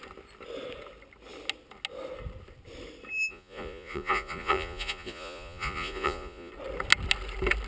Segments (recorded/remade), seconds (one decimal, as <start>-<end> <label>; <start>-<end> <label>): 0.0-3.3 recorded; 3.3-6.5 remade; 6.5-7.7 recorded